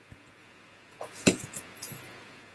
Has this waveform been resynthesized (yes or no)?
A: yes